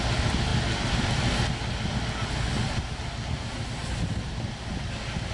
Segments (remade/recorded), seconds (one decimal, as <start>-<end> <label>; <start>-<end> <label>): 0.0-5.3 recorded